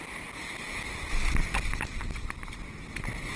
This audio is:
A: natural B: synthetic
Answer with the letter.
A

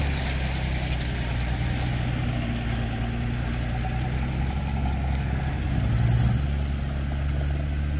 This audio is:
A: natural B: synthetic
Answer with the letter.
A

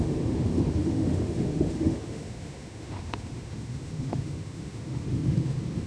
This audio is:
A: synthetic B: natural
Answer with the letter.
A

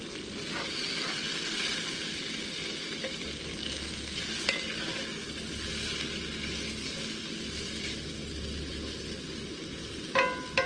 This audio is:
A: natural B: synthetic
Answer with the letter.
A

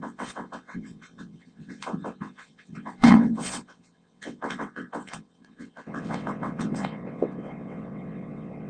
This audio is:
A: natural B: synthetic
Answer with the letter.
B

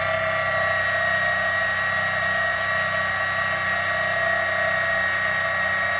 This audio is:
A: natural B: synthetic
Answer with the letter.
A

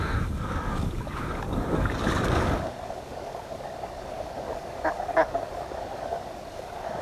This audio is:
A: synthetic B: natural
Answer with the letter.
A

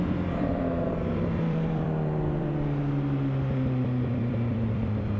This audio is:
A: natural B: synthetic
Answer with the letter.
B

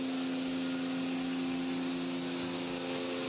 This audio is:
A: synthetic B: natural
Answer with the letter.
B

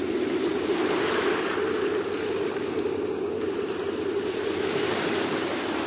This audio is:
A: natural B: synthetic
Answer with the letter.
B